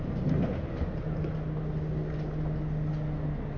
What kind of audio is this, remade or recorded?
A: recorded